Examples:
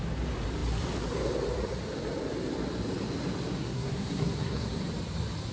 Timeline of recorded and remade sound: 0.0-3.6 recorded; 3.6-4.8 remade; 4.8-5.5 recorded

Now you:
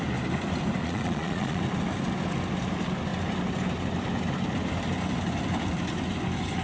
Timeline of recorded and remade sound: 0.0-0.8 recorded; 0.8-1.6 remade; 1.6-6.6 recorded

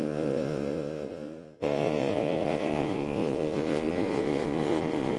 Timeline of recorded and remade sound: 0.0-5.2 remade

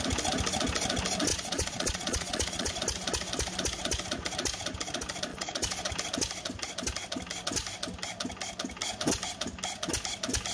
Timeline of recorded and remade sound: 0.0-1.3 recorded; 1.3-2.7 remade; 2.7-5.3 recorded; 5.3-5.9 remade; 5.9-10.5 recorded

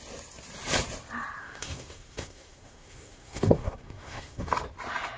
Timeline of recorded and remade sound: 0.0-1.4 recorded; 1.4-4.5 remade; 4.5-5.2 recorded

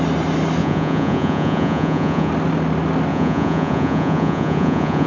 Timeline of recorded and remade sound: 0.0-0.6 recorded; 0.6-2.3 remade; 2.3-3.1 recorded; 3.1-5.1 remade

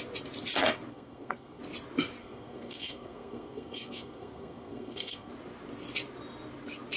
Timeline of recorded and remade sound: 0.0-0.9 recorded; 0.9-1.6 remade; 1.6-2.2 recorded; 2.2-5.3 remade; 5.3-7.0 recorded